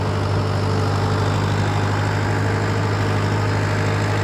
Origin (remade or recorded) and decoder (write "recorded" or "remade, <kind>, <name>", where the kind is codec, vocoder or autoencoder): recorded